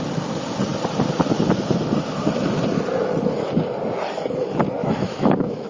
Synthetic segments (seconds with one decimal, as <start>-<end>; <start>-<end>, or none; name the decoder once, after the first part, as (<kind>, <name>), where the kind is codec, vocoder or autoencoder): 4.8-5.7 (autoencoder, DAC-VAE)